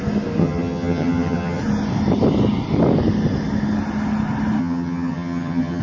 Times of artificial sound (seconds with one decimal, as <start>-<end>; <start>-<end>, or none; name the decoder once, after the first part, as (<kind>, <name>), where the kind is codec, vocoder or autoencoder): 0.4-1.6 (vocoder, HiFi-GAN); 4.6-5.8